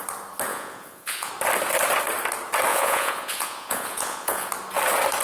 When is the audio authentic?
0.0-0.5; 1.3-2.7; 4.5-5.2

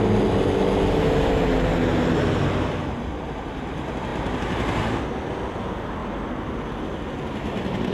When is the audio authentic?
0.0-7.9

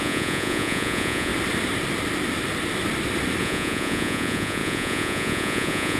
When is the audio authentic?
1.3-3.4

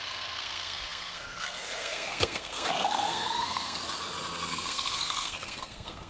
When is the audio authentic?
3.8-4.5